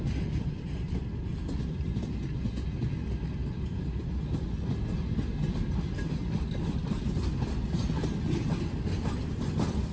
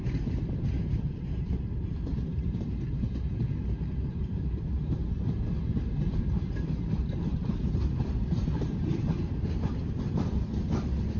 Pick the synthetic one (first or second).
second